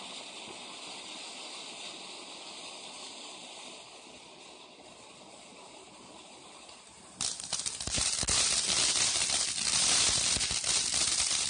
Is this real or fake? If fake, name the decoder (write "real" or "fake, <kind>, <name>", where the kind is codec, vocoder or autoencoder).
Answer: real